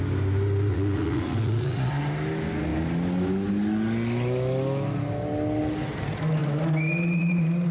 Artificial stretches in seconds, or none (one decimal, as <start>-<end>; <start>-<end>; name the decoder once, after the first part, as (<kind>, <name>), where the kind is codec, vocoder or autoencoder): 0.7-1.9 (vocoder, Vocos)